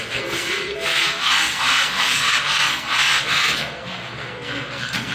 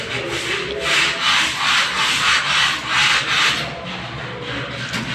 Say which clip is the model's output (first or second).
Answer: first